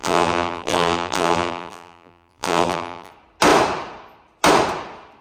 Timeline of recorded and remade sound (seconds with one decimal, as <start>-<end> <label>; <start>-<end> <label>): 0.0-3.1 remade; 3.1-5.2 recorded